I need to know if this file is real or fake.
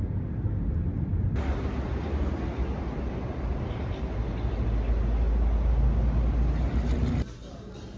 real